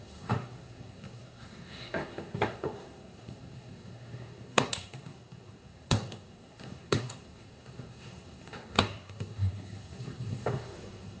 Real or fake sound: fake